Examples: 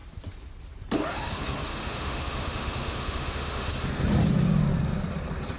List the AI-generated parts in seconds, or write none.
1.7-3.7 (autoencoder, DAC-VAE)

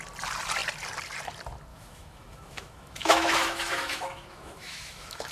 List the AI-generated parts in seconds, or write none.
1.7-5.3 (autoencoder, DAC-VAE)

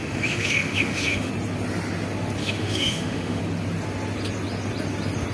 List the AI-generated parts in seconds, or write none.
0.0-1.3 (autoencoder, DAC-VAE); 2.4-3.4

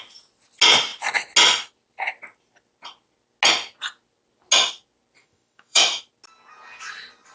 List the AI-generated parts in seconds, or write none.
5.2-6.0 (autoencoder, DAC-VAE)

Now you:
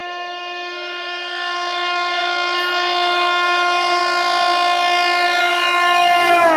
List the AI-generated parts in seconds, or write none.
0.0-4.0 (autoencoder, DAC-VAE); 5.4-6.6